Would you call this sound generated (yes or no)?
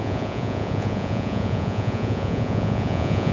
yes